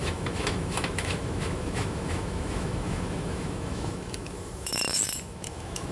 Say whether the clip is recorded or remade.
remade